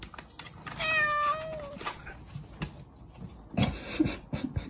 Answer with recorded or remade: recorded